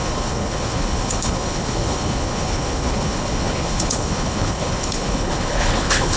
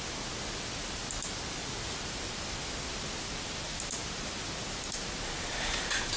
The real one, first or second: second